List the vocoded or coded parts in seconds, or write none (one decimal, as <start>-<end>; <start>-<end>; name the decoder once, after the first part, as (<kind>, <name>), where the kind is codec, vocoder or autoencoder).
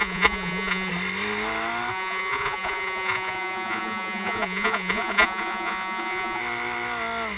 0.0-0.9 (vocoder, Vocos); 1.9-6.4